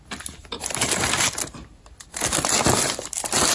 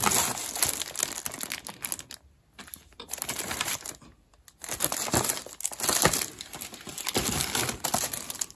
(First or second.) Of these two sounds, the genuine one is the second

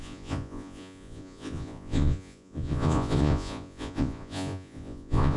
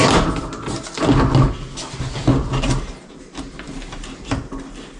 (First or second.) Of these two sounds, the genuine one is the second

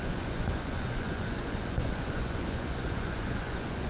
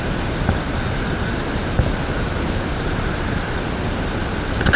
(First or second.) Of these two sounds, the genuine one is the second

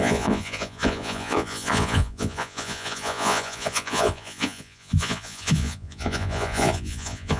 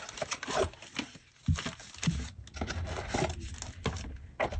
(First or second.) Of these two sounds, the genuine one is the second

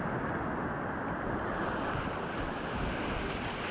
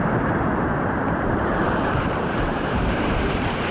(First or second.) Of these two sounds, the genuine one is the first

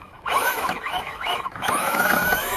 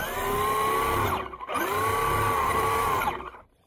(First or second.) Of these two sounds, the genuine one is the second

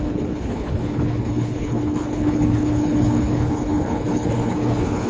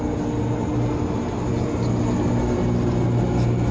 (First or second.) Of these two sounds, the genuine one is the second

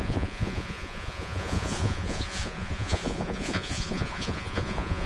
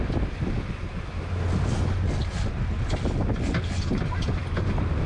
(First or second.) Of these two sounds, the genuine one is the second